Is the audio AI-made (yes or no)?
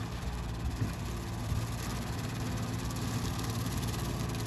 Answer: no